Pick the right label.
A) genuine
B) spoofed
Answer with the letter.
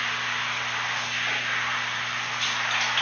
A